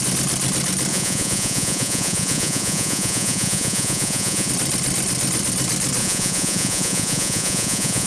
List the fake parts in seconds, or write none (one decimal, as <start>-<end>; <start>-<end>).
0.9-4.5; 6.0-8.1